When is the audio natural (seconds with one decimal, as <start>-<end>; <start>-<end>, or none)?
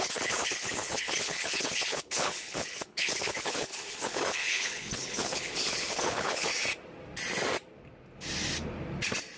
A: 6.5-9.4